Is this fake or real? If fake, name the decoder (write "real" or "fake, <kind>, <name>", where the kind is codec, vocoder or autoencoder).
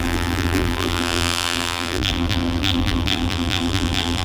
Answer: fake, vocoder, BigVGAN v2